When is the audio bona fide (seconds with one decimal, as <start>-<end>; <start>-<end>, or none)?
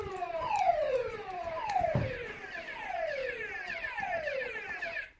3.2-4.8